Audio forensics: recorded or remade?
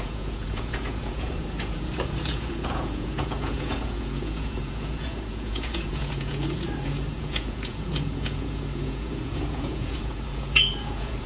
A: remade